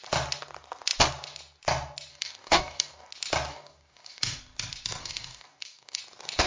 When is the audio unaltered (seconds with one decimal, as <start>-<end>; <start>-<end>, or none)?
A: 0.0-2.1; 3.1-3.5; 4.4-5.0; 6.0-6.5